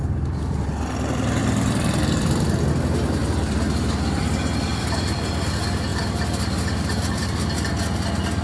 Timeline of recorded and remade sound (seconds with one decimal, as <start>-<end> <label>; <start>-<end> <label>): 0.0-1.4 recorded; 1.4-2.7 remade; 2.7-4.7 recorded; 4.7-5.2 remade; 5.2-8.4 recorded